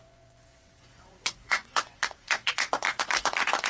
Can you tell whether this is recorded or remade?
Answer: remade